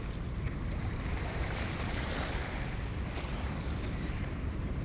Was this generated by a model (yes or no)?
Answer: yes